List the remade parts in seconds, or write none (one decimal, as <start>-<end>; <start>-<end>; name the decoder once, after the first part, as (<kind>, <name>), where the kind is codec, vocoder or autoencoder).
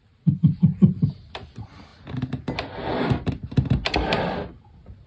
none